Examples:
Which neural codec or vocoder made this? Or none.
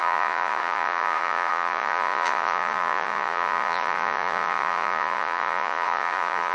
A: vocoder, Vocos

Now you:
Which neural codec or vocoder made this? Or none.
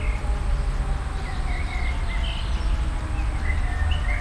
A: none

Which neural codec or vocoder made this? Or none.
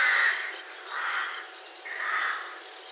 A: none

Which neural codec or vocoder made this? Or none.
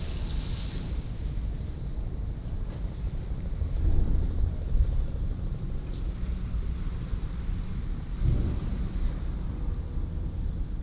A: none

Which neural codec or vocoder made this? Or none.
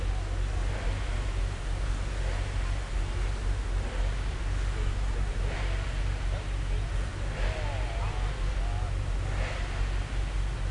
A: none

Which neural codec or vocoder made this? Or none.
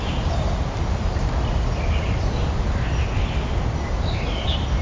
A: none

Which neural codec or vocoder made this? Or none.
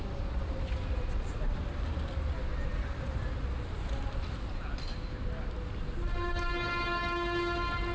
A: none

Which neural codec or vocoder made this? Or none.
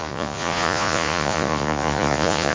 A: vocoder, Vocos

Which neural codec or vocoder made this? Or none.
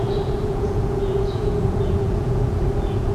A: vocoder, Vocos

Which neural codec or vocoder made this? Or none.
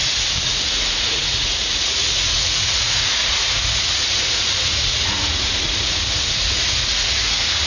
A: vocoder, Vocos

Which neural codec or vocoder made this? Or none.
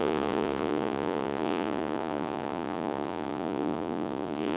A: vocoder, Vocos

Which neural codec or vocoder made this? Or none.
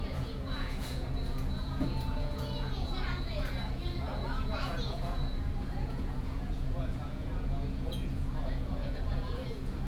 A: vocoder, Vocos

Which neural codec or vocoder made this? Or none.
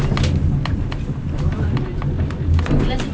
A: none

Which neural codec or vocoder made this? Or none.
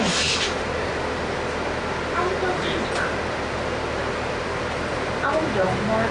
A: none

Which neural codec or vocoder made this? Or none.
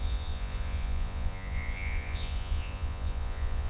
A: vocoder, Vocos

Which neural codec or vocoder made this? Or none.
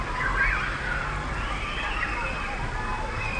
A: none